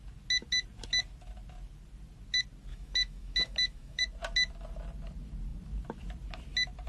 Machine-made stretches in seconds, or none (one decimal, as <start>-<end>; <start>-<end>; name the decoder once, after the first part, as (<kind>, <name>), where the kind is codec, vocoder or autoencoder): 2.7-4.0 (autoencoder, DAC-VAE)

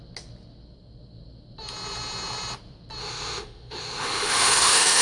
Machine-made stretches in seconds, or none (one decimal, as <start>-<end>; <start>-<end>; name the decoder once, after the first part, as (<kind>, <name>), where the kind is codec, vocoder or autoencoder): 3.0-5.0 (autoencoder, DAC-VAE)

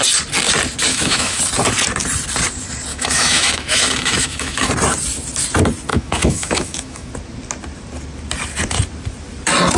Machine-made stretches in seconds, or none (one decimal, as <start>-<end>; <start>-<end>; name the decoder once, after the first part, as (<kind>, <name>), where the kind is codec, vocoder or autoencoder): 0.9-1.4 (autoencoder, DAC-VAE); 2.9-4.7; 5.9-7.1

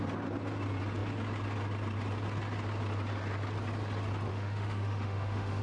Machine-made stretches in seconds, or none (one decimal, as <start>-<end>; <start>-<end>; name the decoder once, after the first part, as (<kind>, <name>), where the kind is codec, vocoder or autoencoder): 4.3-5.6 (autoencoder, DAC-VAE)

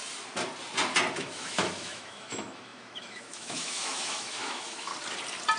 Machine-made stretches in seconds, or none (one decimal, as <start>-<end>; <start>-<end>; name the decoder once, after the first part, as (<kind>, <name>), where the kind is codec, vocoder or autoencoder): 1.1-4.9 (autoencoder, DAC-VAE)

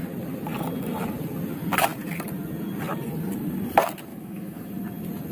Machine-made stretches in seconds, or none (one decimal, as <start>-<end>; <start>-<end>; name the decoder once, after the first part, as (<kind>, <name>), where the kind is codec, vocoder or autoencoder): 4.1-4.7 (autoencoder, DAC-VAE)

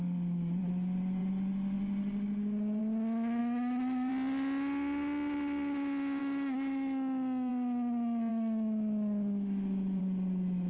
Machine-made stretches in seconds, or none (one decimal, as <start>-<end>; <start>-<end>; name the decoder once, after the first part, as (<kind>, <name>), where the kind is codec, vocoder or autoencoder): 3.4-4.1 (autoencoder, DAC-VAE); 6.2-7.5; 8.3-10.0